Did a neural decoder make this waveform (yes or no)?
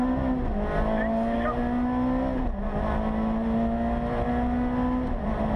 no